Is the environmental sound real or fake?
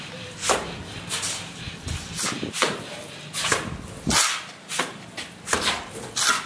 real